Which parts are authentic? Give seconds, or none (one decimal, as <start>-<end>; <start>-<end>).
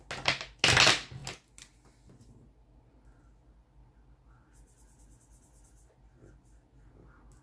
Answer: 0.0-7.4